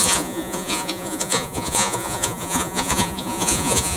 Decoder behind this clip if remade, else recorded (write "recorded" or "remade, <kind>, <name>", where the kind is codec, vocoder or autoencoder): remade, vocoder, Vocos